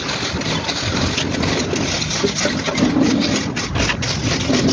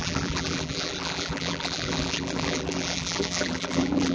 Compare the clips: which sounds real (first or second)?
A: first